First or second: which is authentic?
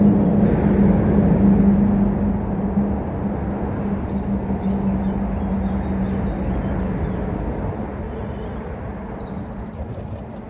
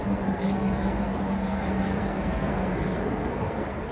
first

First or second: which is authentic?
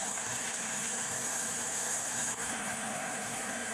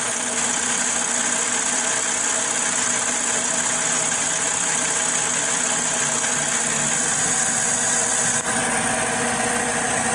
second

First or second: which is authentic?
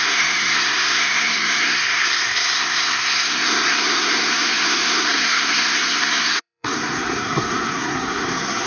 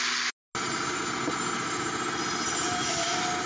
second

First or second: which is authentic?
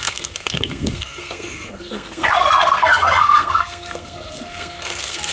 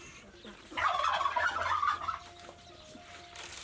second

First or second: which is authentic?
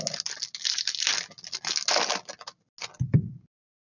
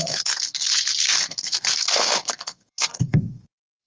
first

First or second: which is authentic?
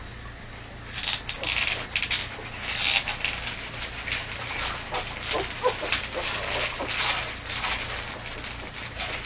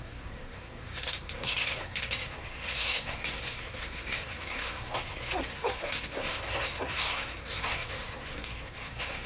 first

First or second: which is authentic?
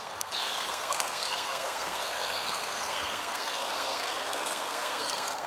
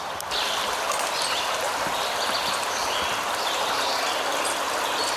second